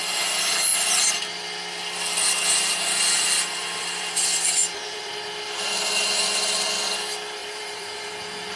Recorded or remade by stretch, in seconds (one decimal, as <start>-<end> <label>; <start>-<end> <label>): 0.0-4.6 recorded; 4.6-5.1 remade; 5.1-7.4 recorded; 7.4-8.1 remade; 8.1-8.6 recorded